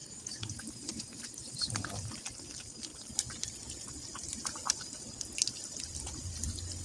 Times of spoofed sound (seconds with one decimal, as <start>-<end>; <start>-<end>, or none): 0.0-2.1; 4.2-4.8